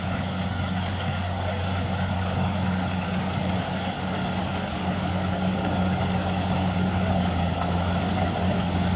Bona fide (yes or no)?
no